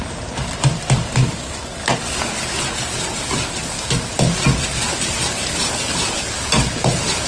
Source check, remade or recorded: recorded